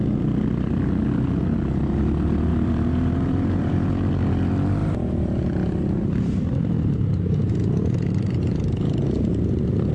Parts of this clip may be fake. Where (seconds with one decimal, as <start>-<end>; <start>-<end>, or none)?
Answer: 2.5-3.9; 4.8-8.3